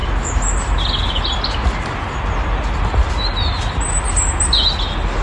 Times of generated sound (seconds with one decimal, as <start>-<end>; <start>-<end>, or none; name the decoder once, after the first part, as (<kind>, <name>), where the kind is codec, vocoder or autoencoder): none